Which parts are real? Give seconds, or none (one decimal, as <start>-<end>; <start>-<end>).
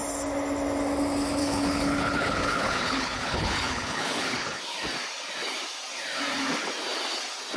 0.0-1.4; 4.6-7.6